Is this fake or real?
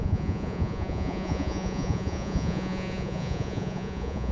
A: fake